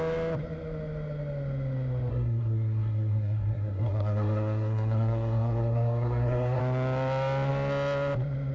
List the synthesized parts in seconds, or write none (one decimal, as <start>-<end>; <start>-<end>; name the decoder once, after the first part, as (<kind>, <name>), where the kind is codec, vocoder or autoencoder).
2.1-6.6 (codec, SNAC)